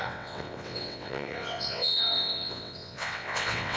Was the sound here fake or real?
fake